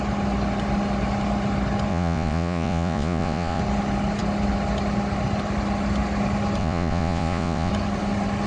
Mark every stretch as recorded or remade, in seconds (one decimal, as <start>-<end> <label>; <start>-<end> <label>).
0.0-1.9 recorded; 1.9-3.6 remade; 3.6-6.6 recorded; 6.6-7.7 remade; 7.7-8.5 recorded